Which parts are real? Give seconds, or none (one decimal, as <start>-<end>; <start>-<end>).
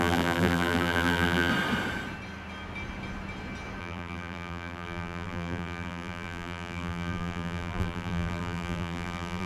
1.5-3.8